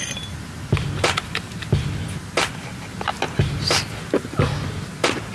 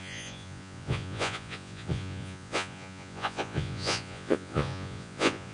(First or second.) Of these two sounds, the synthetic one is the second